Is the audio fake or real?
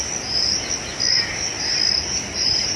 real